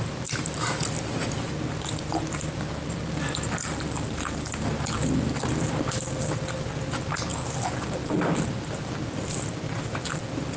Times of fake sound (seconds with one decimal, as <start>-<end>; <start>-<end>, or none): 0.0-10.6